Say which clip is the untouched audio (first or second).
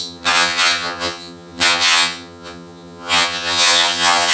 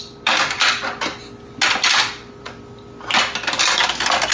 second